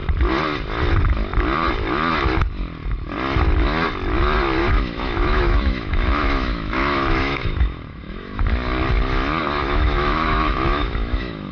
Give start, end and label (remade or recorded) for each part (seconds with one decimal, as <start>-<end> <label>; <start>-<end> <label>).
0.0-4.6 recorded; 4.6-8.4 remade; 8.4-9.6 recorded; 9.6-11.5 remade